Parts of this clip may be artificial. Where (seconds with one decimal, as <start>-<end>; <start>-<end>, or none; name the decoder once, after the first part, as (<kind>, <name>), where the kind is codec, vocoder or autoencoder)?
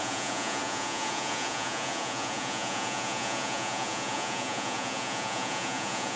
0.0-6.2 (vocoder, Vocos)